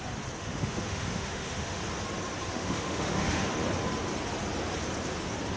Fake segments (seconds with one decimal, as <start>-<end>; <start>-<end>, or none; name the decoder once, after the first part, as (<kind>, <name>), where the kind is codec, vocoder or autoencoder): 0.4-1.8 (autoencoder, DAC-VAE); 2.5-3.5